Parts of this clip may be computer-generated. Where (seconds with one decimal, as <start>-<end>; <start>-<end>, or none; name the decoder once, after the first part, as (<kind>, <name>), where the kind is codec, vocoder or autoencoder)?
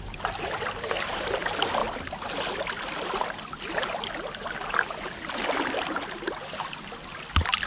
none